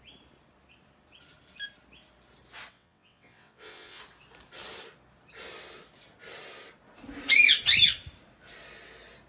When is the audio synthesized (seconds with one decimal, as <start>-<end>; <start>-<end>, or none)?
2.7-4.0